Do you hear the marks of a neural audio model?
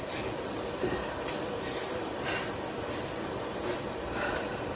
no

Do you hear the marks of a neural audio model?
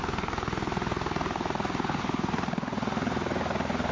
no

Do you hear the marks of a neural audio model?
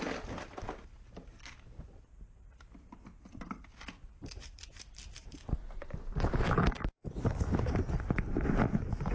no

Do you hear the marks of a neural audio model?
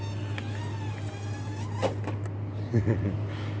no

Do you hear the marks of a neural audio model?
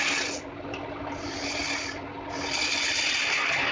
no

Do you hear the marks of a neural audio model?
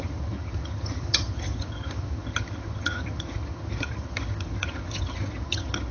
yes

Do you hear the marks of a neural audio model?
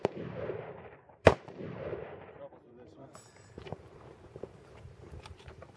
yes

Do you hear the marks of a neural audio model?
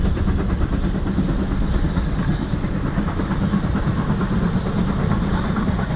no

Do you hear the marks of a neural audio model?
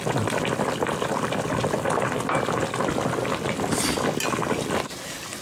no